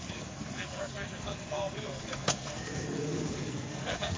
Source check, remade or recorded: remade